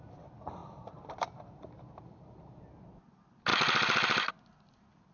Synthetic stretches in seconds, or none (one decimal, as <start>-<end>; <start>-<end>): 0.6-2.6

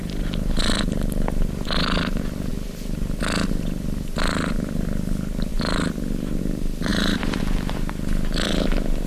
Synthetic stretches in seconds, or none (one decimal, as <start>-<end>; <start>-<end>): 6.9-7.4

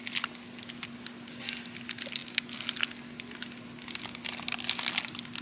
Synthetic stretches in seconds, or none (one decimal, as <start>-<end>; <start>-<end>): none

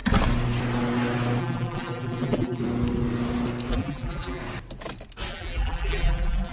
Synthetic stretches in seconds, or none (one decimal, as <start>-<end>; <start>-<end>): 1.4-2.6; 3.7-4.4; 5.3-6.5

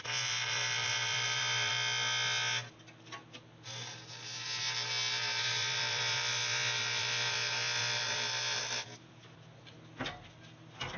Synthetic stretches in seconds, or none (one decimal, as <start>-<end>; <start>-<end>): 0.0-1.7; 5.4-11.0